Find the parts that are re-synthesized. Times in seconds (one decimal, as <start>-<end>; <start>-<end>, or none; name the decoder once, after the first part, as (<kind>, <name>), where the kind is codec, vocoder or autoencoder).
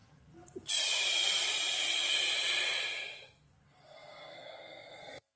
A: 4.0-5.0 (codec, DAC)